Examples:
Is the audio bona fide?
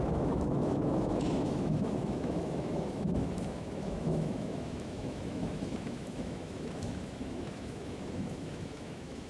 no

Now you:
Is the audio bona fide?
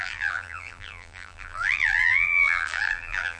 no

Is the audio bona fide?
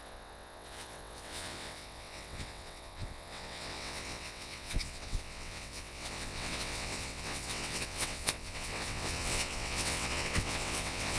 no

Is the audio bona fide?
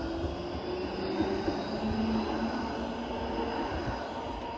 yes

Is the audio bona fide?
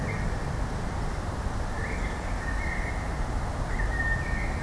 yes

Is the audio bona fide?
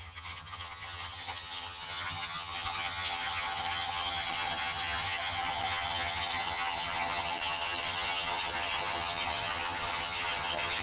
no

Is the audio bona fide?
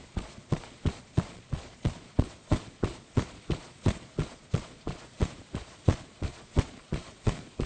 no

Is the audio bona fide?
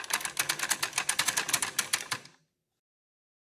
yes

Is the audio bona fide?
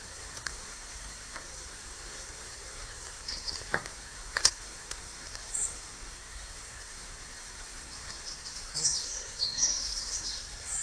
no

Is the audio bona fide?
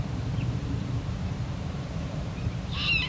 no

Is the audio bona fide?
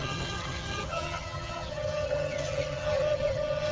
no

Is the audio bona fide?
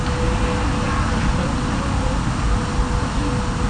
yes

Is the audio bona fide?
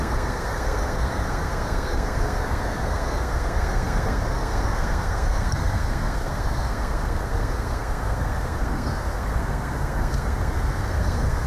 no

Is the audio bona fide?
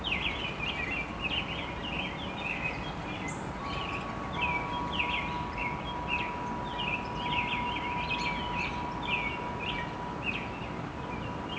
yes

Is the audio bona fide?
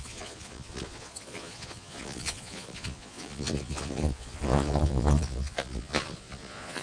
no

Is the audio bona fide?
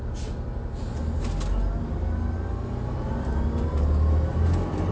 yes